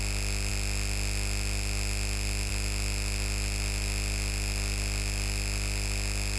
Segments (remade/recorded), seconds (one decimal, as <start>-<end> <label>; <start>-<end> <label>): 0.0-6.4 recorded